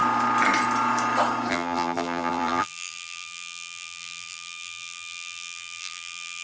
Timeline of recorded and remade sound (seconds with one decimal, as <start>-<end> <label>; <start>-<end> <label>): 0.0-1.5 recorded; 1.5-6.4 remade